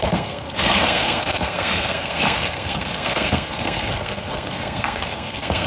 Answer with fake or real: fake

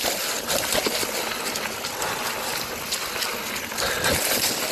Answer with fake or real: real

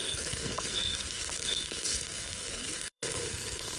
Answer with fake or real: fake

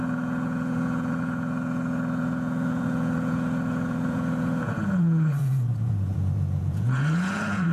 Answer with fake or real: fake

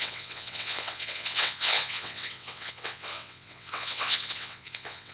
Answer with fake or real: fake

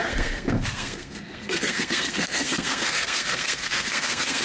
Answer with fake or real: fake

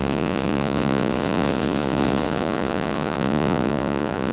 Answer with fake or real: fake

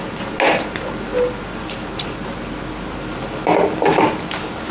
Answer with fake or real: real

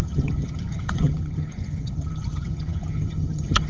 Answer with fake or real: fake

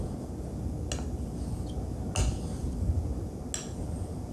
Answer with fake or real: real